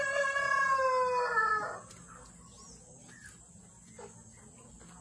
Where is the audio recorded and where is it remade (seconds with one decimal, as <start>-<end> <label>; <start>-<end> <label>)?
0.0-5.0 recorded